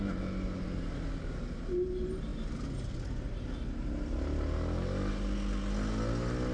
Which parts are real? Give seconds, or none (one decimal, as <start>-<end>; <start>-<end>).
0.0-6.5